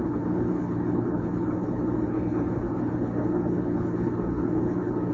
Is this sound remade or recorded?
remade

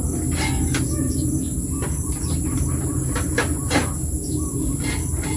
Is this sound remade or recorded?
recorded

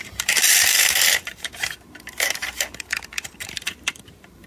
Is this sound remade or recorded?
remade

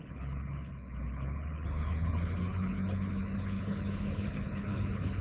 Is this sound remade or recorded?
remade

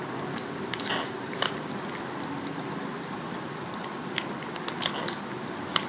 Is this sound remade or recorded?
recorded